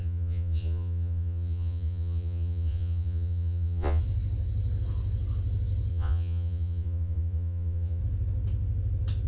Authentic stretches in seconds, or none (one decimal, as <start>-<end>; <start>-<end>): 4.0-5.9; 8.0-9.3